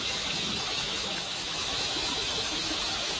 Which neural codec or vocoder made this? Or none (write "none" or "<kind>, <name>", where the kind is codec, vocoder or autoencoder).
autoencoder, DAC-VAE